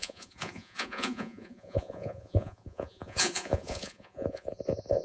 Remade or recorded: remade